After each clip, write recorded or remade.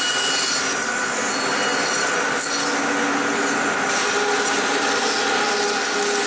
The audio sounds recorded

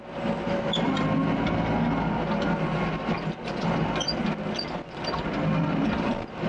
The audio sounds recorded